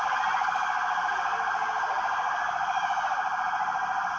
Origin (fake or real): real